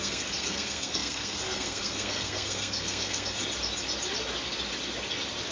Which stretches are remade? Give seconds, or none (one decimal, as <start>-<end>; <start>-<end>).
0.0-3.4